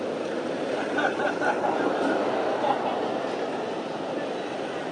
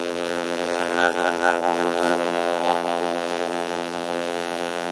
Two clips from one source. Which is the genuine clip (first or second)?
first